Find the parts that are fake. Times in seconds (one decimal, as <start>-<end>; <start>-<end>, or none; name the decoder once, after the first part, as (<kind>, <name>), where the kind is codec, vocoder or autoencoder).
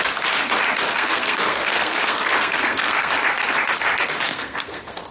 0.9-3.1 (codec, SNAC); 4.3-5.1